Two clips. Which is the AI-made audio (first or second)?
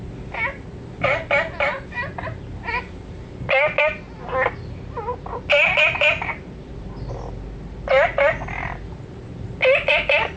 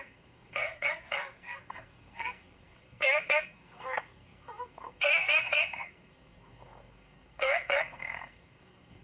second